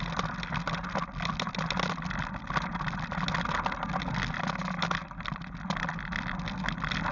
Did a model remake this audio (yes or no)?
no